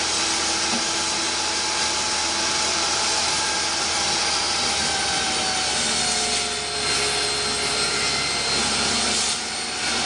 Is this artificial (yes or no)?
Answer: no